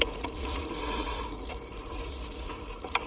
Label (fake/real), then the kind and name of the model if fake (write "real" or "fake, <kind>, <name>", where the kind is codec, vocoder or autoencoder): fake, vocoder, Vocos